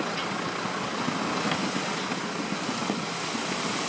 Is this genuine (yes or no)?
yes